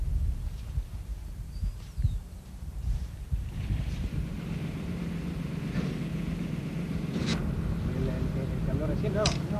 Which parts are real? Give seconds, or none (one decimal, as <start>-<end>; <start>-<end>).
7.3-9.1